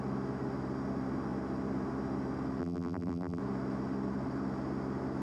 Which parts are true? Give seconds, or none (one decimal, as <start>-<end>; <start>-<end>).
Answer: 0.0-2.6; 3.4-5.2